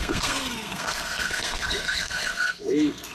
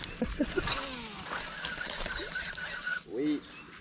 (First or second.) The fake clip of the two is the first